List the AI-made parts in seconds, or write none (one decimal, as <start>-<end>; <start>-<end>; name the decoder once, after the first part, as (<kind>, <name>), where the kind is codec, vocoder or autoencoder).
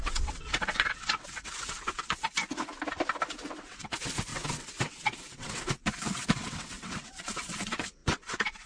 0.0-2.4 (vocoder, WaveNeXt); 3.5-8.7